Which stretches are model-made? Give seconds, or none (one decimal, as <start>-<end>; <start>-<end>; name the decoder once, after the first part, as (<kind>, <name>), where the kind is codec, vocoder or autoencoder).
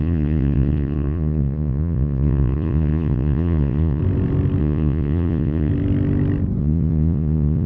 0.0-4.0 (vocoder, Vocos); 4.6-5.7; 6.6-7.7